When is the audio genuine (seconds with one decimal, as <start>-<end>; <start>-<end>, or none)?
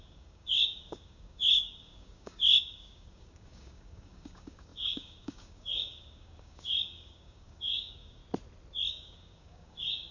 8.2-8.9